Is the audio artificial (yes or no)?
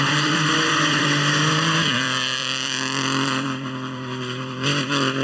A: yes